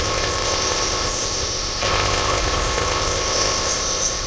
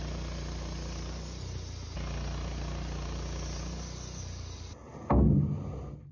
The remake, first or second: first